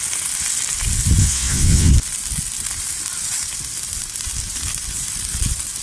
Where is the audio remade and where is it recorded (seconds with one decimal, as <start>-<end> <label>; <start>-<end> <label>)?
0.0-1.2 recorded; 1.2-1.9 remade; 1.9-5.8 recorded